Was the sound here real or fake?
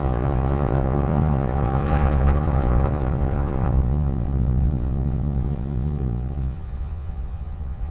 fake